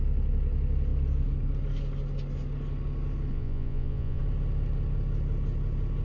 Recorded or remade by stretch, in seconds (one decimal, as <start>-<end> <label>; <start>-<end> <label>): 0.0-3.3 recorded; 3.3-4.2 remade; 4.2-6.0 recorded